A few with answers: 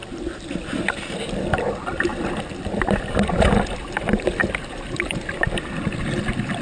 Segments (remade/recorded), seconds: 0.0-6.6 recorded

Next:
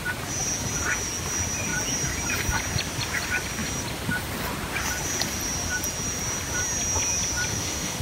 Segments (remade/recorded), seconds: 0.0-7.5 recorded; 7.5-8.0 remade

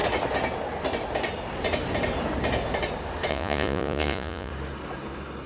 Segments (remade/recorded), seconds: 0.0-3.3 recorded; 3.3-4.5 remade; 4.5-5.5 recorded

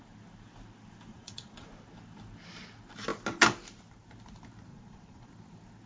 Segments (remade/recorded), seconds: 0.0-1.1 recorded; 1.1-1.7 remade; 1.7-4.7 recorded; 4.7-5.3 remade; 5.3-5.9 recorded

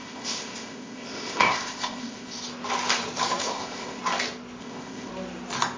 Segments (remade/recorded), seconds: 0.0-2.4 remade; 2.4-3.4 recorded; 3.4-4.0 remade; 4.0-4.6 recorded; 4.6-5.1 remade; 5.1-5.8 recorded